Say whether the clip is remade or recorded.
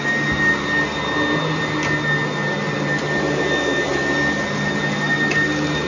recorded